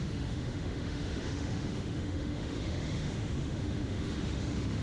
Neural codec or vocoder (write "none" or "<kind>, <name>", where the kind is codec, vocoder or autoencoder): autoencoder, DAC-VAE